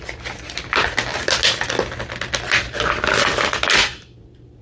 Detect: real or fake real